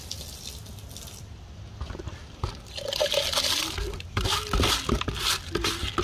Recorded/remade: recorded